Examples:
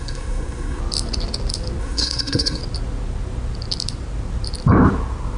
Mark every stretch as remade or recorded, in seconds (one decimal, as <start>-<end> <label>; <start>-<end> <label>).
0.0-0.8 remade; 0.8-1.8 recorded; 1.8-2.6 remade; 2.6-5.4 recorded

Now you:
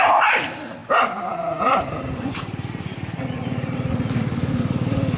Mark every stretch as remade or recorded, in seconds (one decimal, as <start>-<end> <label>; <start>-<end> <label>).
0.0-0.8 recorded; 0.8-3.9 remade; 3.9-5.2 recorded

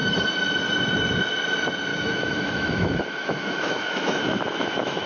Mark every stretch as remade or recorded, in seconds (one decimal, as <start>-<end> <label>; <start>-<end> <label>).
0.0-1.9 recorded; 1.9-5.1 remade